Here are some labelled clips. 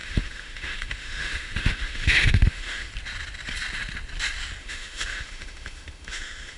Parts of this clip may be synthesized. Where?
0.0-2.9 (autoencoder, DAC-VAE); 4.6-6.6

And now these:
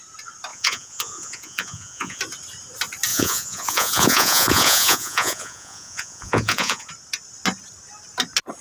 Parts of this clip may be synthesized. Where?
0.5-2.2 (vocoder, Vocos); 3.1-6.9

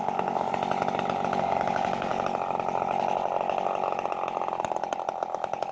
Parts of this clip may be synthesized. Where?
0.0-0.5 (codec, DAC); 1.4-2.1

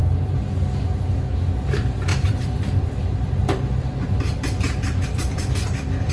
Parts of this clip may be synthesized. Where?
2.1-6.1 (vocoder, BigVGAN v2)

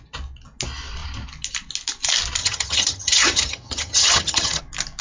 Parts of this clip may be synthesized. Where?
2.4-4.6 (vocoder, HiFi-GAN)